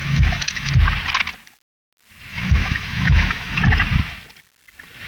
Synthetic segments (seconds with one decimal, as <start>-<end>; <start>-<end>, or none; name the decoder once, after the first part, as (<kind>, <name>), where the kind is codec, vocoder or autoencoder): 0.0-0.7 (autoencoder, DAC-VAE); 2.3-3.6